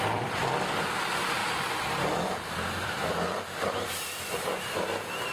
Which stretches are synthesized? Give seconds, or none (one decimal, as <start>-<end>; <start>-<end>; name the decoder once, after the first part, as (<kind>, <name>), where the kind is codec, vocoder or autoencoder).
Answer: 0.0-5.3 (vocoder, BigVGAN v2)